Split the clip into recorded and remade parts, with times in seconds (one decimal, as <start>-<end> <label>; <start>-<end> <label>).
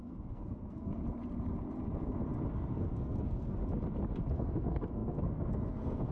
0.0-1.0 remade; 1.0-2.7 recorded; 2.7-3.6 remade; 3.6-4.3 recorded; 4.3-6.1 remade